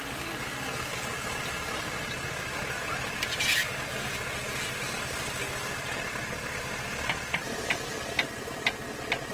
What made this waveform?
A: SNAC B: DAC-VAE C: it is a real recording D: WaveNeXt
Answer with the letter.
C